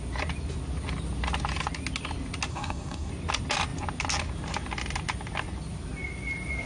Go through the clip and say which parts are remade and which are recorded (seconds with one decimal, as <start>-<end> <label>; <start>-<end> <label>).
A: 0.0-2.5 recorded; 2.5-3.1 remade; 3.1-6.7 recorded

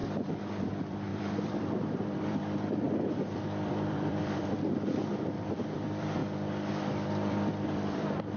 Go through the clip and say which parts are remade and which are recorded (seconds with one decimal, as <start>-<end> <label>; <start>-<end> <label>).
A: 0.0-0.6 recorded; 0.6-6.2 remade; 6.2-6.7 recorded; 6.7-8.4 remade

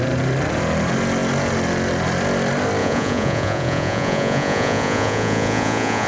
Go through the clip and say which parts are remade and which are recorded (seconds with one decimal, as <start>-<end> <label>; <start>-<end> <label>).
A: 0.0-2.8 recorded; 2.8-6.1 remade

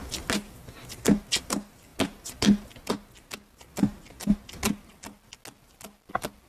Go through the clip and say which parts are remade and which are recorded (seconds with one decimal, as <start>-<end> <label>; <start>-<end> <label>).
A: 0.0-6.5 recorded